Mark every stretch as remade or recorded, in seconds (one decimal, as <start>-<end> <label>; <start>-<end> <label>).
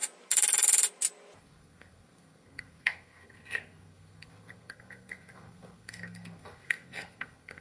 0.0-1.4 recorded; 1.4-7.6 remade